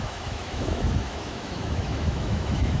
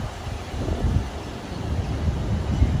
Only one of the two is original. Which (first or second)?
second